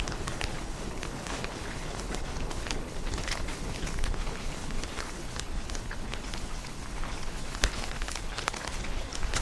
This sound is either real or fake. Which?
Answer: fake